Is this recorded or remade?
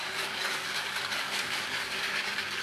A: remade